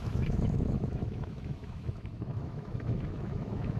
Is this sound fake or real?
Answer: fake